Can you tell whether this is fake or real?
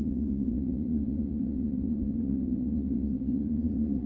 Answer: fake